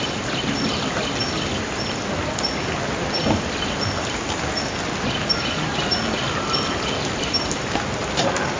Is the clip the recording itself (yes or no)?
yes